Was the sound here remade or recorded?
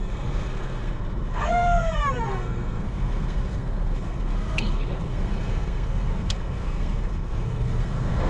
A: remade